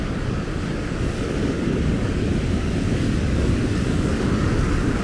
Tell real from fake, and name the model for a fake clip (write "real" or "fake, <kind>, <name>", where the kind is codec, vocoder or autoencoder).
fake, codec, DAC